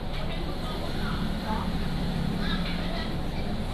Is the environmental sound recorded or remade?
remade